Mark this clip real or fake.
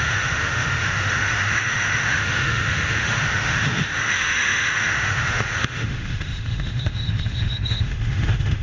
fake